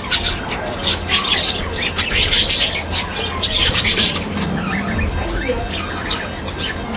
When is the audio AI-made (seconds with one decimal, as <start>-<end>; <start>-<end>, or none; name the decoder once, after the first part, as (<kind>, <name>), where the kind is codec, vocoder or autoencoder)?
none